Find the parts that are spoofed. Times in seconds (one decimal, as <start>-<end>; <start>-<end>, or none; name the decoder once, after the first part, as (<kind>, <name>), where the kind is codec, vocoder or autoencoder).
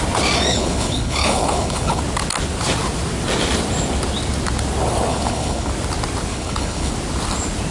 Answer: 0.5-2.0 (codec, HILCodec); 5.1-5.7; 6.3-6.9